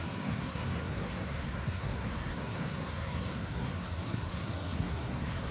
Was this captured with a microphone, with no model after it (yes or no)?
no